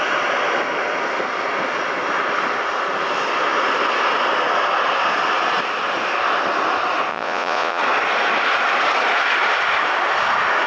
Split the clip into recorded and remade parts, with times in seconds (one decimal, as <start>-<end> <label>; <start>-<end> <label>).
0.0-7.1 recorded; 7.1-7.8 remade; 7.8-10.7 recorded